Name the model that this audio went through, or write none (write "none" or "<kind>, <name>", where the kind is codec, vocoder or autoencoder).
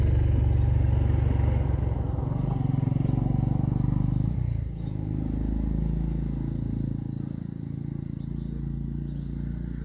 none